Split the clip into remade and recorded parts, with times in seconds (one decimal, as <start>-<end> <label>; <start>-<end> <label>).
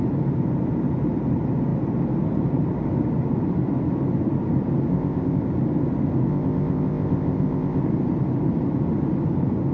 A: 0.0-4.9 recorded; 4.9-5.4 remade; 5.4-6.3 recorded; 6.3-7.8 remade; 7.8-9.7 recorded